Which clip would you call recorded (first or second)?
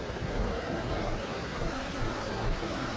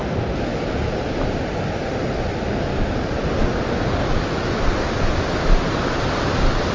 second